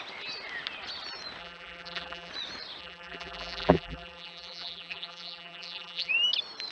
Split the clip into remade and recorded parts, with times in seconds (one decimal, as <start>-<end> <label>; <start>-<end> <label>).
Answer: 0.0-1.4 recorded; 1.4-2.3 remade; 2.3-2.8 recorded; 2.8-6.1 remade; 6.1-6.7 recorded